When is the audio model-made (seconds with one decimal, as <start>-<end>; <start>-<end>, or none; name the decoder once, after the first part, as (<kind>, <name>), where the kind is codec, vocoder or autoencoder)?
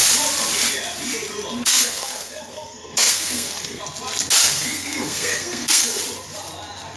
1.6-3.8 (codec, SNAC); 4.4-6.0